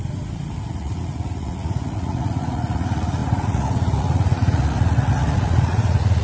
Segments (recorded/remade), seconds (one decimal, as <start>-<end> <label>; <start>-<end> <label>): 0.0-0.7 recorded; 0.7-6.2 remade